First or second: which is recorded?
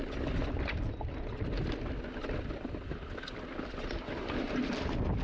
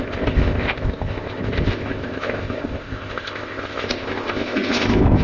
first